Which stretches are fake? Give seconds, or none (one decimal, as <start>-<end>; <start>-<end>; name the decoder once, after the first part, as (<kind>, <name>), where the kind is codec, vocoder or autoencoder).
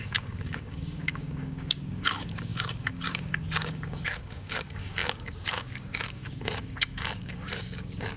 0.0-8.2 (codec, DAC)